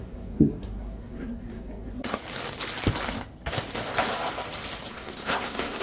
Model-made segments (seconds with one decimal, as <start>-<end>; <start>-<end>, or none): 0.0-2.2; 4.9-5.8